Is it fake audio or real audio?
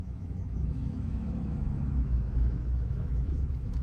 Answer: fake